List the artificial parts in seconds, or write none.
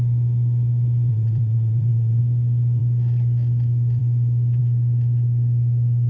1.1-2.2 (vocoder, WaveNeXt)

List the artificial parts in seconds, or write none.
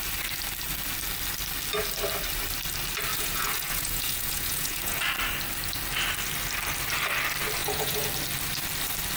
3.1-5.0 (vocoder, Vocos); 7.6-8.1